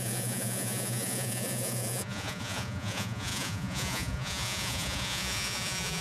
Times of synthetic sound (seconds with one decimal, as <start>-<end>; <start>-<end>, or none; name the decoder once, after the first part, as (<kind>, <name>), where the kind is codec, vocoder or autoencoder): 0.0-6.0 (vocoder, Vocos)